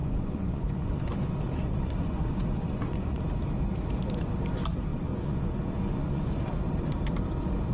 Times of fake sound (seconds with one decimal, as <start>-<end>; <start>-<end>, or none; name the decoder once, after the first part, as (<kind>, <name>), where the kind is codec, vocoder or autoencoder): 0.0-3.2 (vocoder, Vocos); 4.9-6.3